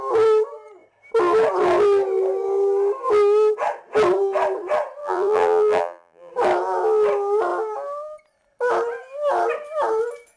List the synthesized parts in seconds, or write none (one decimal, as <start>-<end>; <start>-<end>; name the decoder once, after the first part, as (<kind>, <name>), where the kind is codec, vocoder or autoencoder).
5.0-6.3 (vocoder, BigVGAN v2)